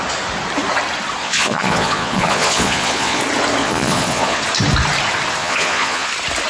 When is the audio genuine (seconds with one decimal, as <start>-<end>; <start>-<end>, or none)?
0.0-1.2; 3.2-3.6; 4.4-5.4; 6.1-6.5